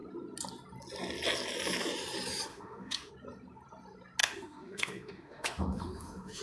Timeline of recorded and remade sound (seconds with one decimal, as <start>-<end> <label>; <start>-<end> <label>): 0.0-2.5 recorded; 2.5-3.1 remade; 3.1-4.2 recorded; 4.2-6.4 remade